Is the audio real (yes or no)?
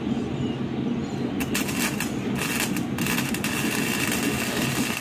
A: yes